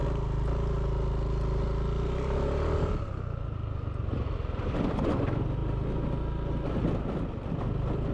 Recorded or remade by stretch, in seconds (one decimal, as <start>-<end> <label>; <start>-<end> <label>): 0.0-8.1 recorded